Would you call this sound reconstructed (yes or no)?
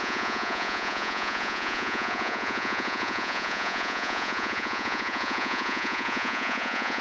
yes